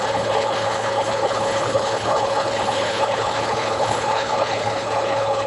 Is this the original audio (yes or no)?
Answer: no